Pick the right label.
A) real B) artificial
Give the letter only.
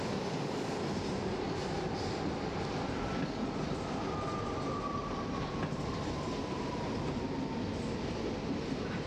A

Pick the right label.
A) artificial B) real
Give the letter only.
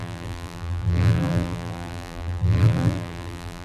A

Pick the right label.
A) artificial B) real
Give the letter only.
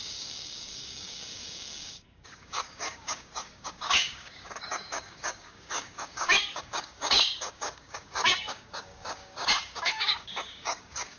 A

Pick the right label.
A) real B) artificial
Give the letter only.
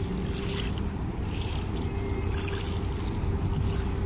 A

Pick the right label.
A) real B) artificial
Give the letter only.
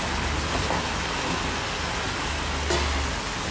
A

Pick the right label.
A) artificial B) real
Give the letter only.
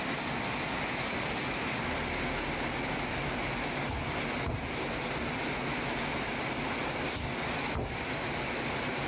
B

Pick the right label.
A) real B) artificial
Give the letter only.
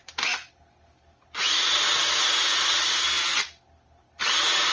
A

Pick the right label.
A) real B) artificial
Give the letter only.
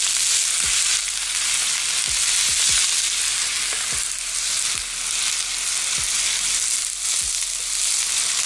A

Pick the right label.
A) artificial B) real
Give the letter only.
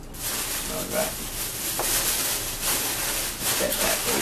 B